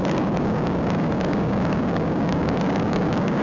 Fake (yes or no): yes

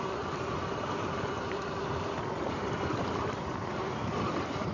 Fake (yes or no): no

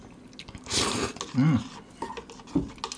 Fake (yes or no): no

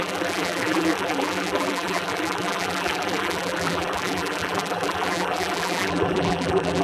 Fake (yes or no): yes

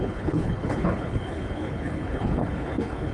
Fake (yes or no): yes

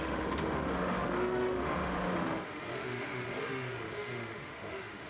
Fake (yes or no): yes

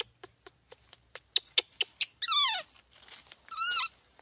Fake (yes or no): no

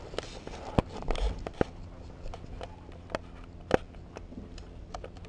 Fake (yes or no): no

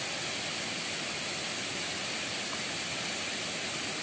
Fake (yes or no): no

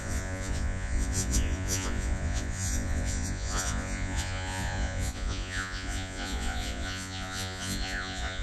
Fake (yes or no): yes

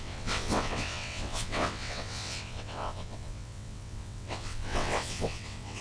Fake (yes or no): yes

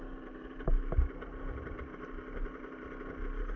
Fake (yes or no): no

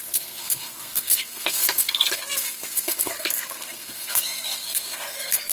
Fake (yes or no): yes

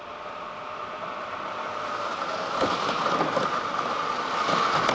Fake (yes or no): no